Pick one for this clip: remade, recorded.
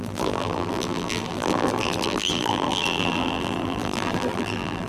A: remade